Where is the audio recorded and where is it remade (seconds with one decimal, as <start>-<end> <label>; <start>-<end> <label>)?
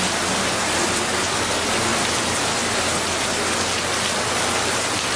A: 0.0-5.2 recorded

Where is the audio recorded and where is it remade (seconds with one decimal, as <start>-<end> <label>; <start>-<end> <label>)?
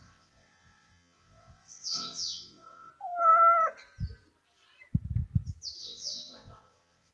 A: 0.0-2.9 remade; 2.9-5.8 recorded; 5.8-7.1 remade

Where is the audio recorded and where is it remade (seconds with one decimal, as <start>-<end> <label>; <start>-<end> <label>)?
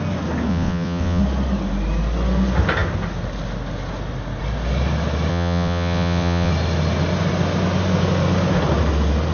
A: 0.0-0.5 recorded; 0.5-1.2 remade; 1.2-5.3 recorded; 5.3-6.5 remade; 6.5-9.3 recorded